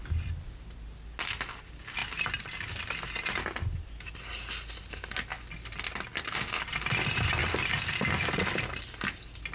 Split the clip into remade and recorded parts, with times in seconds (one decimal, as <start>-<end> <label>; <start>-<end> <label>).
0.0-9.5 recorded